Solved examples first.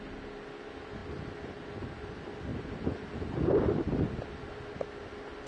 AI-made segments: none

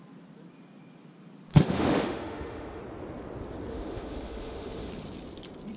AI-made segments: 1.5-2.8; 3.7-4.9

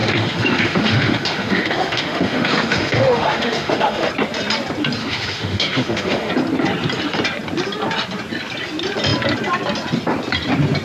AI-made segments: 0.0-4.1; 5.0-6.3

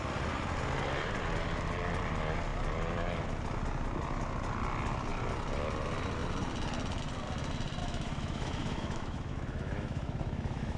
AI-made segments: 7.8-10.8